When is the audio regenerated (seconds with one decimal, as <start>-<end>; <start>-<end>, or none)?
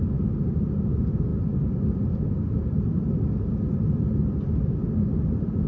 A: none